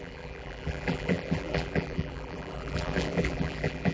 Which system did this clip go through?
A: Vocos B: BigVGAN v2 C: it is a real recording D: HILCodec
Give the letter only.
B